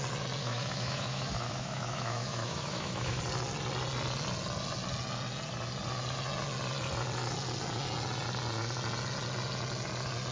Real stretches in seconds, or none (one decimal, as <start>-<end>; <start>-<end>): 0.0-0.4; 3.2-10.3